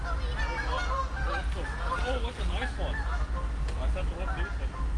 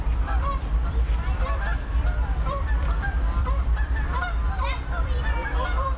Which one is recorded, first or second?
first